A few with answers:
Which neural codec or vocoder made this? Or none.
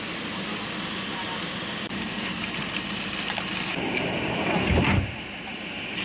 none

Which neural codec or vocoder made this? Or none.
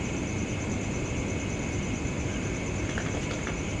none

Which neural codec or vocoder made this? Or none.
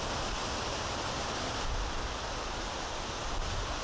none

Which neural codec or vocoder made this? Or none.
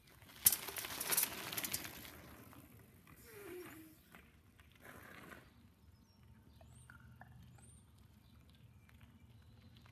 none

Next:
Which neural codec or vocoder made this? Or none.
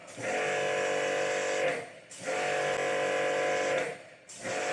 none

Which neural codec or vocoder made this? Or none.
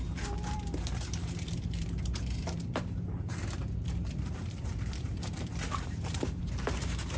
vocoder, BigVGAN v2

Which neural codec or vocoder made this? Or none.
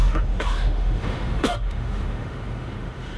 autoencoder, DAC-VAE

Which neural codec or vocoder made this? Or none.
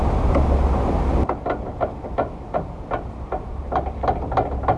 none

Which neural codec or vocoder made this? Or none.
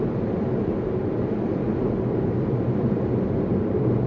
none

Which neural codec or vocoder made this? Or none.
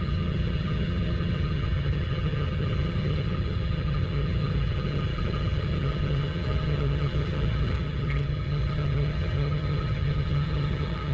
vocoder, HiFi-GAN